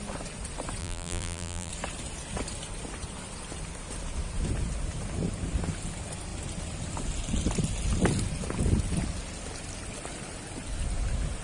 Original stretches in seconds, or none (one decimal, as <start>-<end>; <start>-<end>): 0.0-0.8; 1.7-11.4